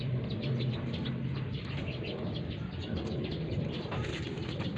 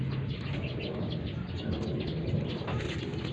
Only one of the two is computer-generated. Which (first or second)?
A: first